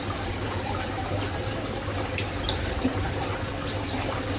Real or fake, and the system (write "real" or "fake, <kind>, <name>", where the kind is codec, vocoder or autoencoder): real